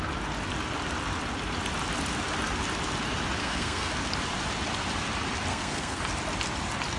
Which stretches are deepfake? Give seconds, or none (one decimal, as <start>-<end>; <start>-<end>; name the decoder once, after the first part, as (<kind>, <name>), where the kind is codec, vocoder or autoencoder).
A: 3.4-3.9 (codec, SNAC); 5.5-6.0